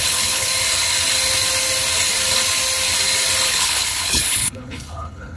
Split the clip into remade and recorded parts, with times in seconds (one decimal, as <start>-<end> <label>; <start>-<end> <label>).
0.0-0.5 remade; 0.5-3.5 recorded; 3.5-5.4 remade